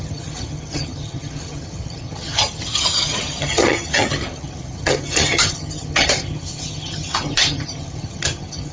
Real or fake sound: fake